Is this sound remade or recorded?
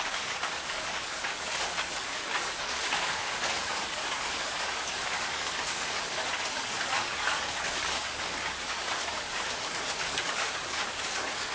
remade